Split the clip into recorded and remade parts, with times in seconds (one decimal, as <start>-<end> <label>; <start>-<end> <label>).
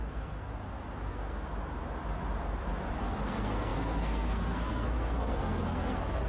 0.0-0.5 remade; 0.5-1.1 recorded; 1.1-1.5 remade; 1.5-3.0 recorded; 3.0-6.3 remade